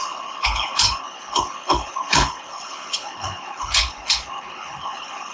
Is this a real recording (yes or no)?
no